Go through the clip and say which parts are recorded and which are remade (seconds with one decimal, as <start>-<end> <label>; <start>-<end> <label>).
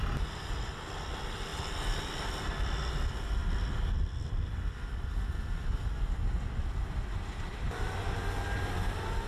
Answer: 0.0-9.3 recorded